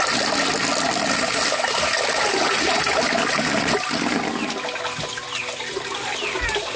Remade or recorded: recorded